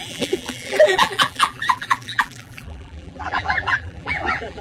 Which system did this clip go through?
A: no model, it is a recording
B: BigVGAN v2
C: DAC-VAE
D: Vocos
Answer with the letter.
B